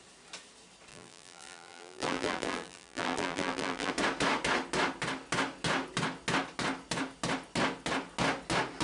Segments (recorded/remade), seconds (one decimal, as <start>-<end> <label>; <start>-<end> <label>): 0.0-0.9 recorded; 0.9-3.9 remade; 3.9-8.8 recorded